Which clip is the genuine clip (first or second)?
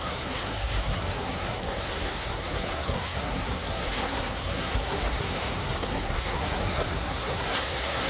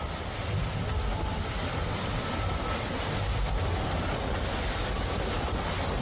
second